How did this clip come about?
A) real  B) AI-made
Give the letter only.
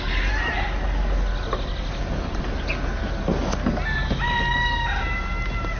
A